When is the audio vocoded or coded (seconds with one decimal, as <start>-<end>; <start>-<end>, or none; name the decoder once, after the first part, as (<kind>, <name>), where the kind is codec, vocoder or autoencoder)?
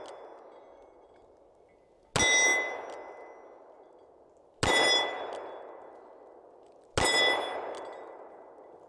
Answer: none